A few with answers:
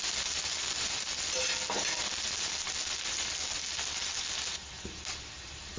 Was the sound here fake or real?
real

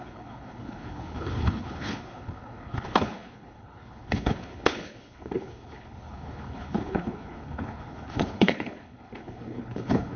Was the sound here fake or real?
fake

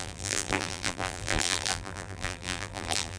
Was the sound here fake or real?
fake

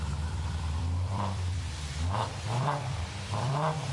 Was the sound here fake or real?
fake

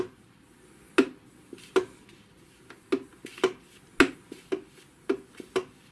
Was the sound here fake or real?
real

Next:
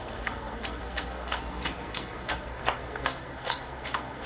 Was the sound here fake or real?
fake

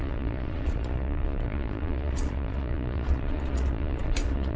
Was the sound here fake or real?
fake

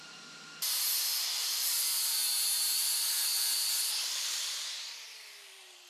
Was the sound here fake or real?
fake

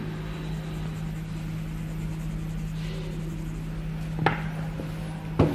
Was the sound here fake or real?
real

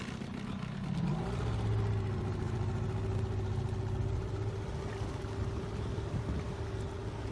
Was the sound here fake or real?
real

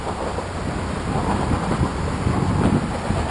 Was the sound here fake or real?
real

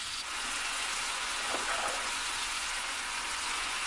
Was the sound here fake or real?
fake